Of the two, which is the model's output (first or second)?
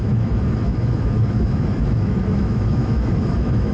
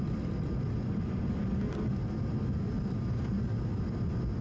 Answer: first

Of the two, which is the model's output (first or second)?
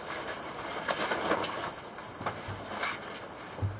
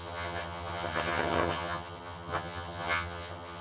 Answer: second